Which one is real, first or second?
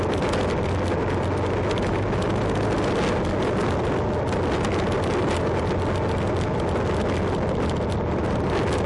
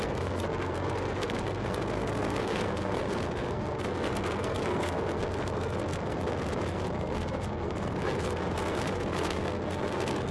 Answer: first